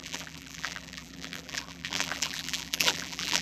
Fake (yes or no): yes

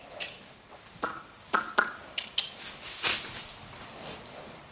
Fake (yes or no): no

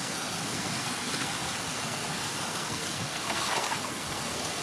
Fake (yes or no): yes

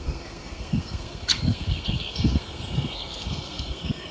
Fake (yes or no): yes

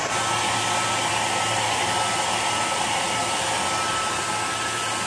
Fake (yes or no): no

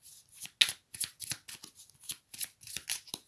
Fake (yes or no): no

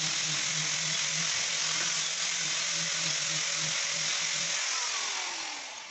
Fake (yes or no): no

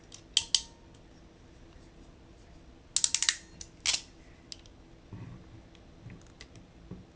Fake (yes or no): no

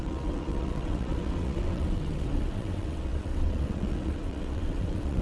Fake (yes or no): yes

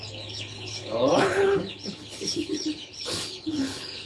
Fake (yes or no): yes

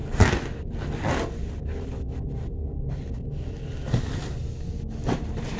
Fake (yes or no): no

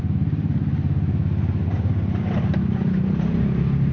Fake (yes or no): no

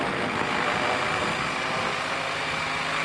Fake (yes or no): no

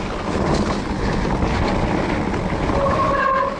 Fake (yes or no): no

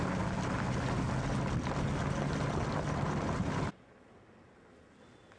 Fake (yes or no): no